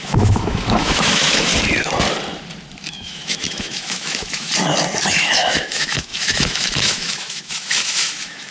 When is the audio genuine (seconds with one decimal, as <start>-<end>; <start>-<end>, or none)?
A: 1.5-2.9; 4.5-5.1